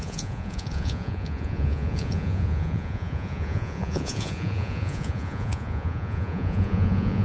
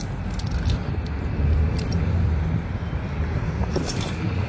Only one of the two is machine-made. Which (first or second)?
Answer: first